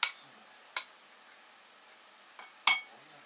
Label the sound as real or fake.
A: real